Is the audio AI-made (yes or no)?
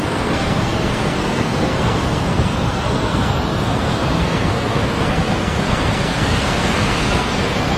yes